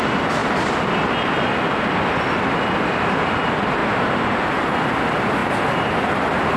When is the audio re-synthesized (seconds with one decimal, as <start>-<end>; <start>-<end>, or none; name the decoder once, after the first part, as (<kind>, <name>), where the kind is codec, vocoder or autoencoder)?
none